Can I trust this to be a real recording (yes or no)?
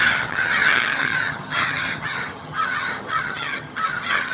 no